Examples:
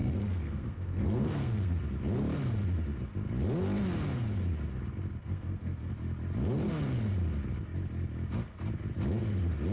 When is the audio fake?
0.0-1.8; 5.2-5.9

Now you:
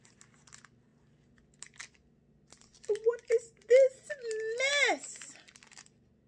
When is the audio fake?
none

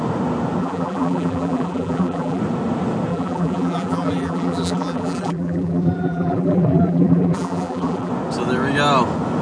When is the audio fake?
0.6-2.4; 3.1-8.1

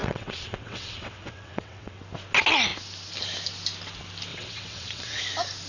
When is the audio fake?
0.0-2.0; 4.3-5.2

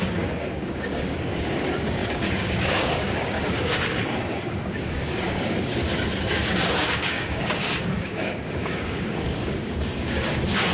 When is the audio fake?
0.0-5.8; 6.3-10.7